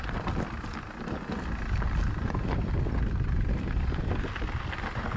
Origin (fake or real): real